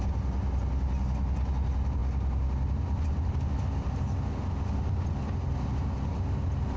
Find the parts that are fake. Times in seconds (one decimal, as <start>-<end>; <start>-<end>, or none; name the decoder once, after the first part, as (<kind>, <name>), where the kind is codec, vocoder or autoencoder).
none